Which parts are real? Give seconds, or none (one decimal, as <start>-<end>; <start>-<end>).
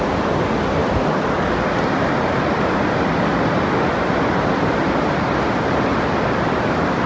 0.0-7.1